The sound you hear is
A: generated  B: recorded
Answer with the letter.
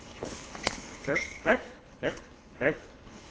A